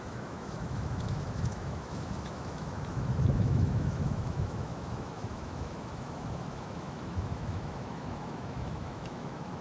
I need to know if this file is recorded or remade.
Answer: remade